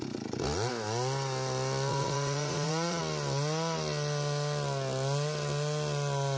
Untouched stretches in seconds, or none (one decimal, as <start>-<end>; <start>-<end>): 0.0-1.9; 3.0-6.4